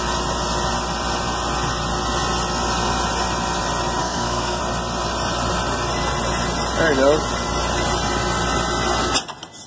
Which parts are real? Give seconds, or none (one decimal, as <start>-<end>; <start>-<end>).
0.0-4.0; 4.6-9.7